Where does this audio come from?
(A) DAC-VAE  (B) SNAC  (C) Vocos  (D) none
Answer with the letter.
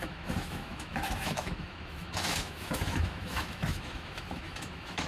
A